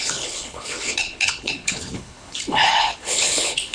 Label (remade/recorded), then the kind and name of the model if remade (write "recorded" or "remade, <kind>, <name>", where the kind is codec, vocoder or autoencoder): remade, codec, HILCodec